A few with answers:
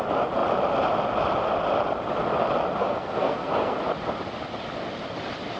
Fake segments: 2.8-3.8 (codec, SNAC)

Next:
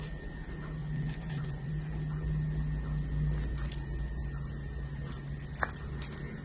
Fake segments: 0.8-1.7 (vocoder, Vocos)

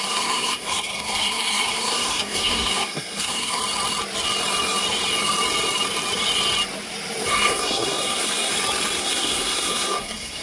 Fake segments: 0.0-3.6 (codec, SNAC); 7.3-8.5; 9.0-10.4

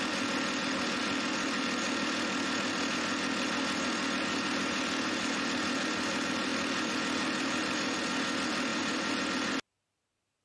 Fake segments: 8.7-9.3 (vocoder, BigVGAN v2)